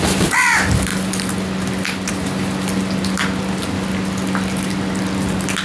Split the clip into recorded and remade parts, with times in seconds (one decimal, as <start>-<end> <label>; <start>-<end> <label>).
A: 0.0-5.6 recorded